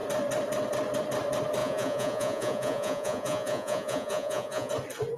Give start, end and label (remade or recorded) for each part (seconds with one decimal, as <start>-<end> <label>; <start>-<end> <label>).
0.0-1.6 recorded; 1.6-4.7 remade; 4.7-5.2 recorded

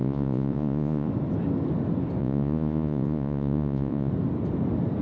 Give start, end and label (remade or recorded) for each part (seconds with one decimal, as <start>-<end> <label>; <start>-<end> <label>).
0.0-1.1 remade; 1.1-2.2 recorded; 2.2-4.1 remade; 4.1-5.0 recorded

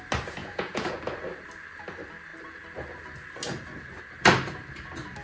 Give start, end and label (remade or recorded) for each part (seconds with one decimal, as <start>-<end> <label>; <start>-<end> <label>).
0.0-0.4 recorded; 0.4-1.0 remade; 1.0-5.2 recorded

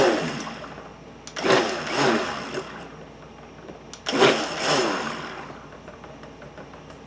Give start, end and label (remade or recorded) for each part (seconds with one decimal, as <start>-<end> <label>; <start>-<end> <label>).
0.0-7.1 recorded

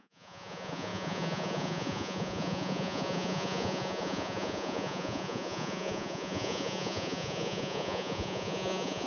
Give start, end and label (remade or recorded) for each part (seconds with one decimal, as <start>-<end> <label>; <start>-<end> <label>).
0.0-9.1 remade